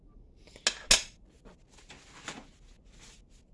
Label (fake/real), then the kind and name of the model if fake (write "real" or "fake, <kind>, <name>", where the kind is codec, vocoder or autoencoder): real